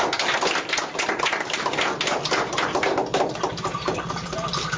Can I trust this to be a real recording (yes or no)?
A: yes